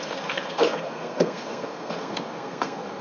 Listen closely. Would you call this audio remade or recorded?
remade